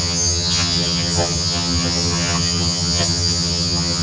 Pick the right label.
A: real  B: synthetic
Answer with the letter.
B